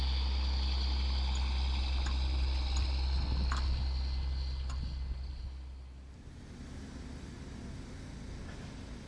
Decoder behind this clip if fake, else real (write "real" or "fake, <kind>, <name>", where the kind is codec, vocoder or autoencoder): real